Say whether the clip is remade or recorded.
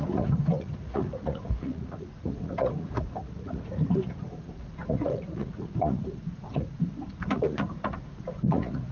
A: remade